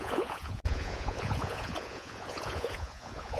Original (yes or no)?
no